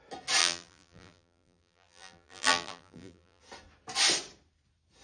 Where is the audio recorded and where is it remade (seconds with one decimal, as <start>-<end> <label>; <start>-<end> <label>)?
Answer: 0.0-0.4 recorded; 0.4-3.4 remade; 3.4-5.0 recorded